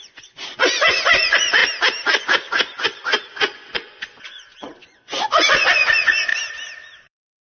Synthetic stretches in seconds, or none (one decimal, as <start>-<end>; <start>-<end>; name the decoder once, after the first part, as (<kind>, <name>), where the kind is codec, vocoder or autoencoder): 0.0-1.6 (vocoder, Vocos); 2.2-6.3; 7.0-7.4